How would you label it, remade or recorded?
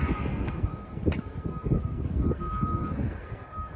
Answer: remade